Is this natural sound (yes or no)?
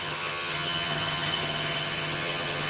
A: no